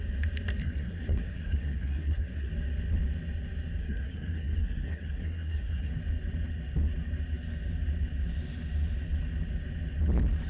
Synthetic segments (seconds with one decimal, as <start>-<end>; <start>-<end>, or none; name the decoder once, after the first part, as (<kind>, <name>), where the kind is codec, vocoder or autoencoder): 0.6-2.5 (codec, SNAC); 3.8-5.9